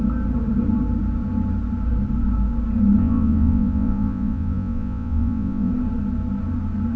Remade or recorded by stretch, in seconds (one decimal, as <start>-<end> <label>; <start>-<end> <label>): 0.0-3.0 recorded; 3.0-5.7 remade; 5.7-7.0 recorded